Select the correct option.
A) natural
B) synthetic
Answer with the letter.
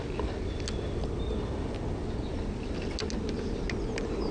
A